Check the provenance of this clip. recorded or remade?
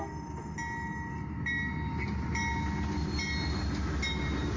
recorded